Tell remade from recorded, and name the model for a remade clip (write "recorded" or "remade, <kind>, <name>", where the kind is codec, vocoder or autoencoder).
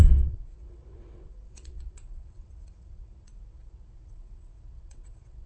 remade, vocoder, WaveNeXt